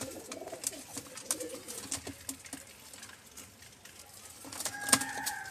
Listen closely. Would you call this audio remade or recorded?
recorded